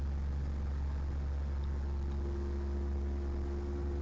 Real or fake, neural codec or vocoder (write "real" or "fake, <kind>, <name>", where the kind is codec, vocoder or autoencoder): real